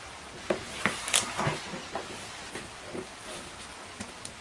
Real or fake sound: real